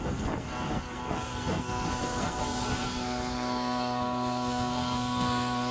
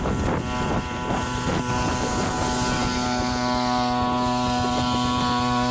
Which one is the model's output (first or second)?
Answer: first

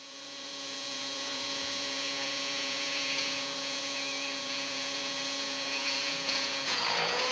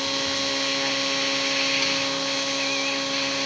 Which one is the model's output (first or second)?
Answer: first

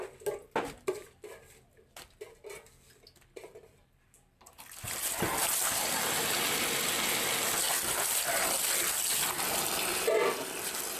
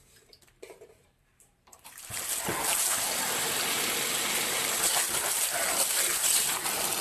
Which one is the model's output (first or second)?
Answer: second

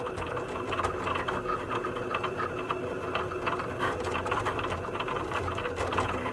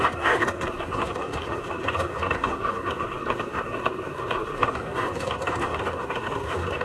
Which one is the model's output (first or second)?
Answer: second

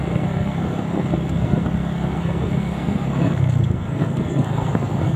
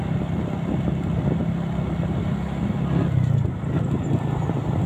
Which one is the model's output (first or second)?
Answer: first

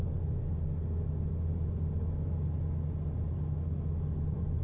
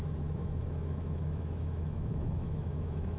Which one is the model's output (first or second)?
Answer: second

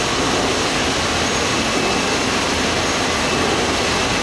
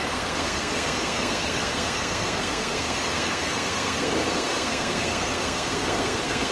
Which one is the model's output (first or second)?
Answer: second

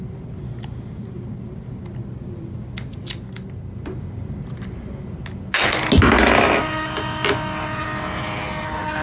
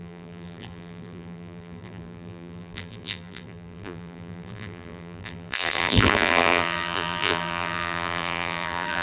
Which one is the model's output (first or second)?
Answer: second